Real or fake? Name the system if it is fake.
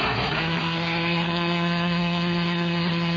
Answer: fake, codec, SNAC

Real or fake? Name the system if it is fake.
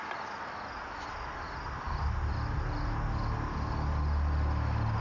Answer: real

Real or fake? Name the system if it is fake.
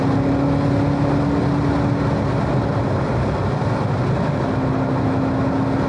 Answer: real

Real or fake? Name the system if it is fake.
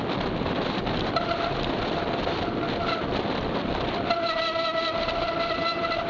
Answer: real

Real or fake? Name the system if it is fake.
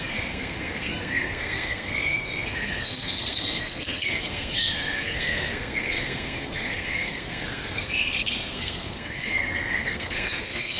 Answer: fake, codec, SNAC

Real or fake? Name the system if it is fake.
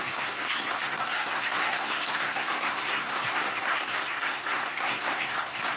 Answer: fake, codec, SNAC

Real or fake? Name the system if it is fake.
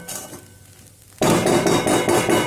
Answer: real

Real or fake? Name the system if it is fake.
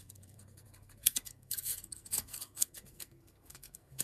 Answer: fake, codec, SNAC